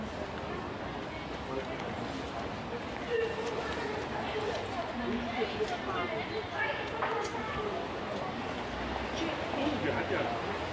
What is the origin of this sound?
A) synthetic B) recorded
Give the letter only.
B